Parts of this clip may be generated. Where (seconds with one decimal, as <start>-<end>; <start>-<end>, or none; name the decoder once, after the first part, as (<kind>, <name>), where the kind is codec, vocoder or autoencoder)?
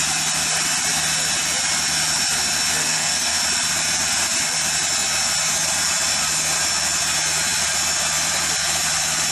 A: 2.8-3.4 (codec, SNAC)